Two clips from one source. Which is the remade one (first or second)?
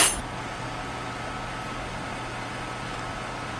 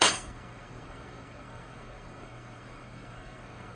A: second